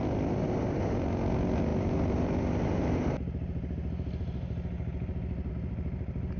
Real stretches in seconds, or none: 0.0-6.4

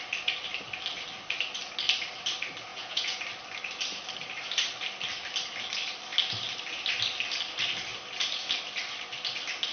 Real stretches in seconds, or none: 0.0-2.7; 3.2-9.7

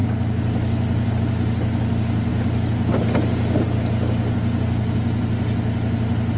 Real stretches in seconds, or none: 0.0-6.4

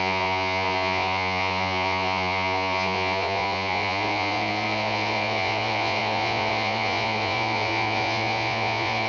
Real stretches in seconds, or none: none

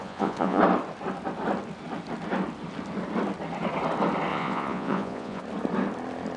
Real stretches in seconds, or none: 0.6-4.3; 5.4-6.4

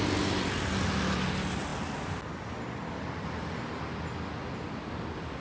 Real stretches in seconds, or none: 0.0-5.4

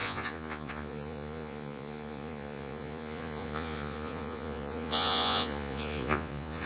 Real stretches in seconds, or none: none